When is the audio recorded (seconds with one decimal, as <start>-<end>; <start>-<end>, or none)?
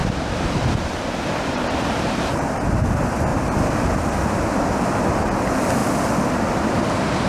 2.4-3.3; 4.1-7.3